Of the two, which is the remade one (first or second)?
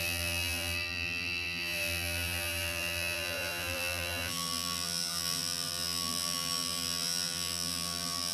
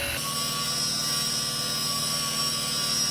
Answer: first